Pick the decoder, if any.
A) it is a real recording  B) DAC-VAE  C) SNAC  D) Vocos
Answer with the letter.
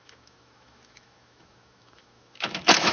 B